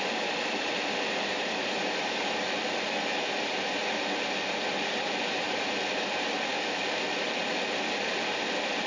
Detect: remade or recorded recorded